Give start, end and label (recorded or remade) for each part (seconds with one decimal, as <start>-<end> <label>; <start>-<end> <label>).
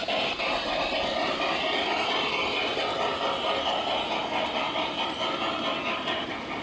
0.0-6.6 recorded